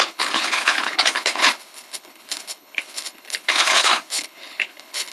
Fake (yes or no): yes